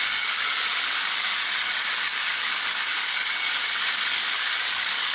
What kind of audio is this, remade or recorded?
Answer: remade